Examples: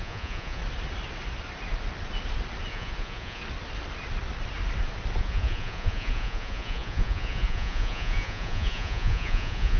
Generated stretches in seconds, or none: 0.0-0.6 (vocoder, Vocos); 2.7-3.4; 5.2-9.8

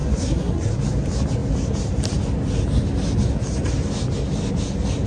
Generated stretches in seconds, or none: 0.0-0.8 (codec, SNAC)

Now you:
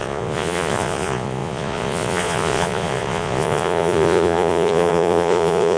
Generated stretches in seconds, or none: 0.0-5.8 (vocoder, Vocos)